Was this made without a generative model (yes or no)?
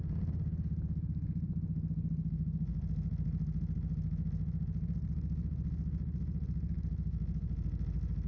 yes